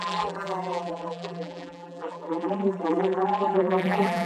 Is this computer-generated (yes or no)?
yes